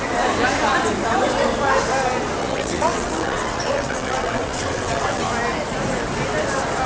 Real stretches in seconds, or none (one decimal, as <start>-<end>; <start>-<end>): 0.0-2.4; 5.2-6.9